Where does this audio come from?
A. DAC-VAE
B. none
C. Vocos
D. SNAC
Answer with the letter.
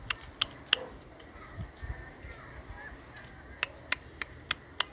B